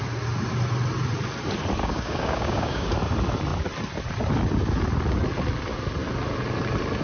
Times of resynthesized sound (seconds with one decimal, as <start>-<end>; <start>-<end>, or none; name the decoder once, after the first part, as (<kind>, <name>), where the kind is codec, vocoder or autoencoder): 1.8-2.9 (codec, DAC)

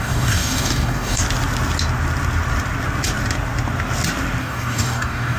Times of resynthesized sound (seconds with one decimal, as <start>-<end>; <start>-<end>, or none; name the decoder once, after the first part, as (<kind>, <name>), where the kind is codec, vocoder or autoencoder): 0.0-1.2 (codec, DAC); 4.4-5.4

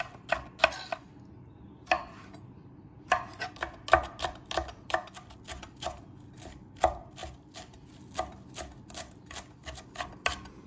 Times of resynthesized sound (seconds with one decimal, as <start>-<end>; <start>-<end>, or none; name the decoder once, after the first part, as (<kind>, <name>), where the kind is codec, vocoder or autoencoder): none

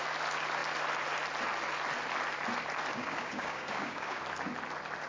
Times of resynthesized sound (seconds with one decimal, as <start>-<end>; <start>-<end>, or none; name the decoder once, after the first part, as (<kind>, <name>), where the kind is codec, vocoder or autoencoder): 2.9-4.2 (codec, DAC)

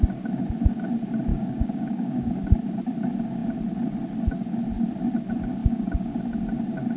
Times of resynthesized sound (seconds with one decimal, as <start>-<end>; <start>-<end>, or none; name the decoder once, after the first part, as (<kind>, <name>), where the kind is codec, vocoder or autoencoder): 1.3-2.4 (codec, DAC); 5.6-6.2

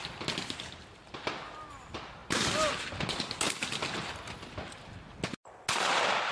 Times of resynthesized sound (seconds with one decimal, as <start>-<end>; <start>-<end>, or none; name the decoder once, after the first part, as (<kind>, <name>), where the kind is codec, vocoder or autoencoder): none

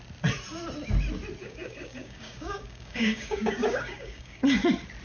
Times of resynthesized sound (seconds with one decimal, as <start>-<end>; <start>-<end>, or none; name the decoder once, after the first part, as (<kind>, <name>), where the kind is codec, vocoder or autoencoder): 1.4-4.4 (codec, DAC)

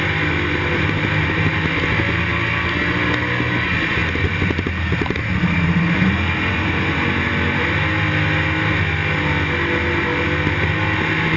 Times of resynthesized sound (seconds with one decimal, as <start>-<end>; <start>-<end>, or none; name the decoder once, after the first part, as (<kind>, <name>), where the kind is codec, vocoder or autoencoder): none